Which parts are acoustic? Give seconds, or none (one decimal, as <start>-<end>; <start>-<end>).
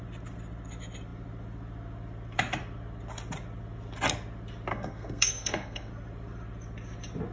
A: 0.0-4.7; 5.9-7.3